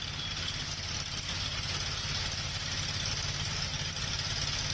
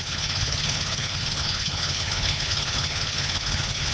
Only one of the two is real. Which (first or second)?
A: first